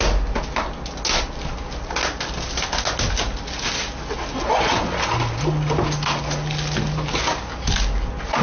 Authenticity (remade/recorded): recorded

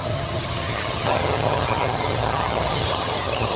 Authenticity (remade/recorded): remade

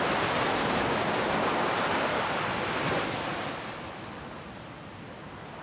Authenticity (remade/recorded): recorded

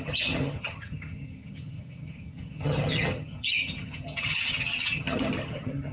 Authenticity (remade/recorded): remade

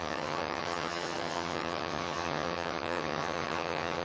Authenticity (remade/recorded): remade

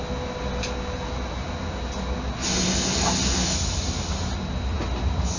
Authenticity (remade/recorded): recorded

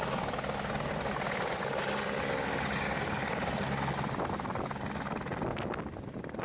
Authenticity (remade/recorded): recorded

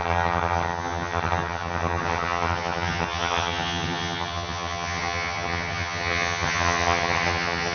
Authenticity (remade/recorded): remade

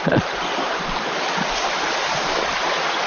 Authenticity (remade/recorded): recorded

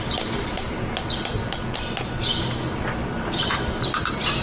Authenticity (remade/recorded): recorded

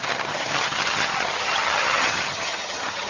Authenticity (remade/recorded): remade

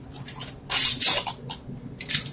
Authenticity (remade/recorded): recorded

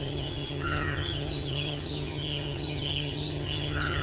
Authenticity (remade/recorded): remade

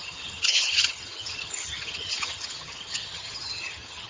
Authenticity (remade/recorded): remade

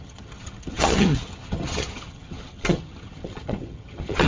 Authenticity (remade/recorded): remade